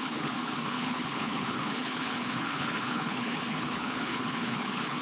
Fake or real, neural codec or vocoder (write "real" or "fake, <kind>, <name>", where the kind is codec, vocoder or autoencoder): fake, codec, HILCodec